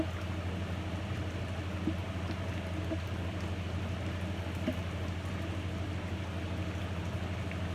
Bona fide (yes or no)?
yes